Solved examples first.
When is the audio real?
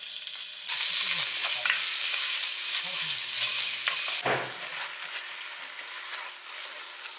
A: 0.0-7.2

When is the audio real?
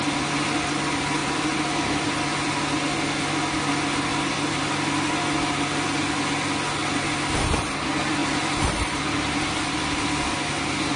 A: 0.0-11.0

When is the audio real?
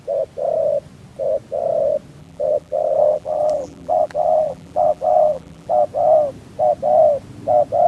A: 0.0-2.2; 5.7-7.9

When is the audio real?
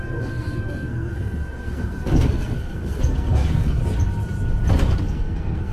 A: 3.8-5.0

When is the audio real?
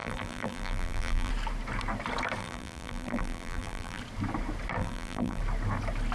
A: 1.3-2.4; 4.0-4.8; 5.4-6.1